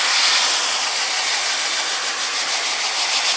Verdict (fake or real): real